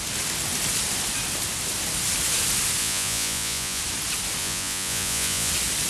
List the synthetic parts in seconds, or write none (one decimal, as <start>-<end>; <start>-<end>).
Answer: 2.8-3.8; 4.4-5.5